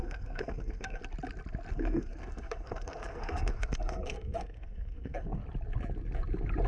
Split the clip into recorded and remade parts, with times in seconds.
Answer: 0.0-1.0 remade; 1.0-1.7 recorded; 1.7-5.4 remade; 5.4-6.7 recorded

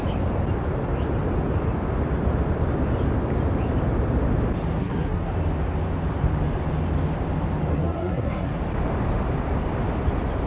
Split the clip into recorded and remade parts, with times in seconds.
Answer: 0.0-4.8 recorded; 4.8-5.3 remade; 5.3-7.7 recorded; 7.7-8.5 remade; 8.5-10.5 recorded

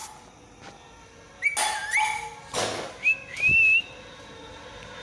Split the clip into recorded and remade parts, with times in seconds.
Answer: 0.0-5.0 recorded

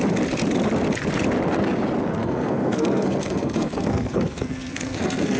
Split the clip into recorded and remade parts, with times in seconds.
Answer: 0.0-2.1 recorded; 2.1-5.4 remade

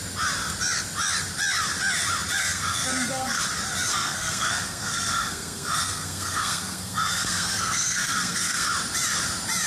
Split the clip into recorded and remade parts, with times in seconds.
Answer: 0.0-2.4 recorded; 2.4-3.4 remade; 3.4-3.9 recorded; 3.9-8.7 remade; 8.7-9.7 recorded

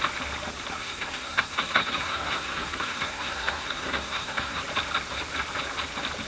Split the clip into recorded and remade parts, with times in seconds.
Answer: 0.0-0.8 recorded; 0.8-4.6 remade; 4.6-6.3 recorded

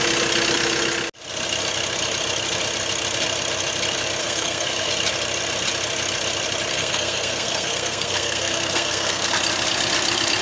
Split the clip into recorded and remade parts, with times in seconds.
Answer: 0.0-4.2 recorded; 4.2-4.9 remade; 4.9-6.7 recorded; 6.7-9.3 remade; 9.3-10.4 recorded

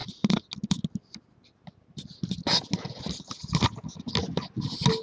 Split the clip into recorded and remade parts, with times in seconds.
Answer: 0.0-5.0 recorded